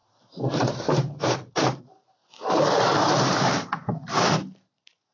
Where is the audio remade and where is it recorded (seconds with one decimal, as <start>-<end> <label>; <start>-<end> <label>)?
0.0-1.5 remade; 1.5-2.2 recorded; 2.2-3.9 remade; 3.9-5.1 recorded